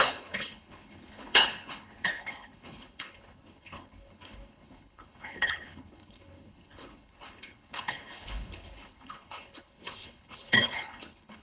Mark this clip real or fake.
fake